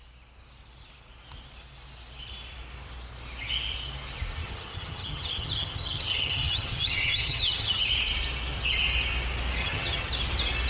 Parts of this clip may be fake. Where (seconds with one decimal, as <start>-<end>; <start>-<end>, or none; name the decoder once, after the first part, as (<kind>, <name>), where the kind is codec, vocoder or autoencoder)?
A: 4.4-7.8 (vocoder, HiFi-GAN); 9.6-10.1